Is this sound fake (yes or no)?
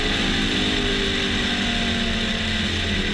no